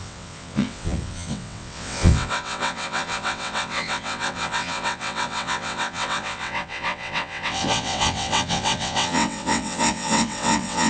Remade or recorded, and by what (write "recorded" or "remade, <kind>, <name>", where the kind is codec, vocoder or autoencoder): remade, vocoder, WaveNeXt